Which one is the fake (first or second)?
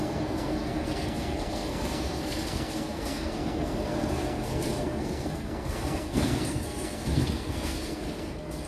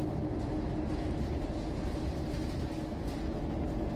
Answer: first